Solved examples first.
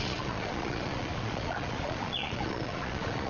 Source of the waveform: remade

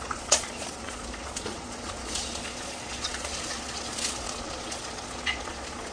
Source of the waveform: remade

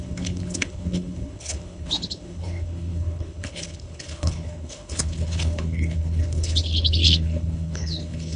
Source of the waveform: remade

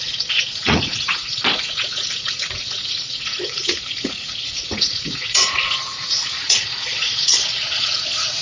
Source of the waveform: remade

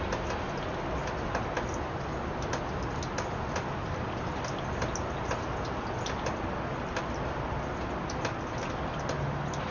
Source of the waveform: recorded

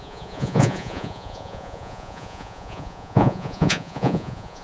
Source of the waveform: remade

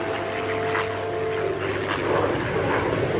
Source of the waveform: recorded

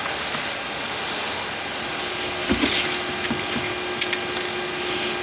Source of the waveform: recorded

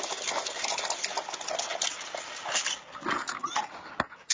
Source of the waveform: recorded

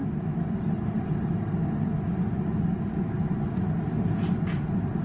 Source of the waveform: recorded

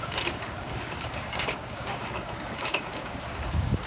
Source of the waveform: remade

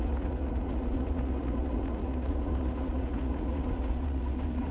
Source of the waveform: remade